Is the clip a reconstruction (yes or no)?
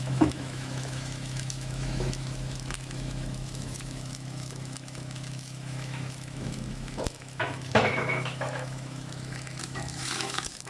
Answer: yes